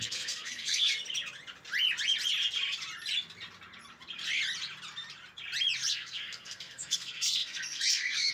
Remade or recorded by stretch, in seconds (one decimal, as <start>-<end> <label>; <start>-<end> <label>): 0.0-0.9 remade; 0.9-5.9 recorded; 5.9-8.3 remade